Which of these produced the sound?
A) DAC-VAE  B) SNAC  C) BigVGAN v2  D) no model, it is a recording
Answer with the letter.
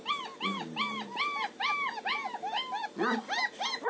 D